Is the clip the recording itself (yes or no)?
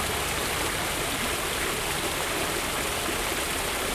yes